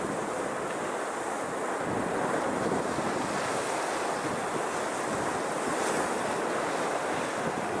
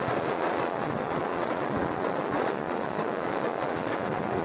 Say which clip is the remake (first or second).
second